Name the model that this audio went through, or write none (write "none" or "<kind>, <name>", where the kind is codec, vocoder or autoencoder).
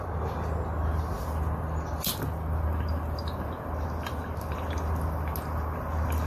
none